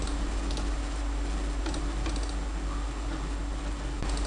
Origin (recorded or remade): recorded